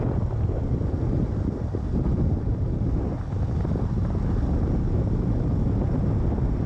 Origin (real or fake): real